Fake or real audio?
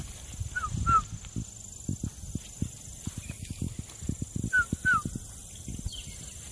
real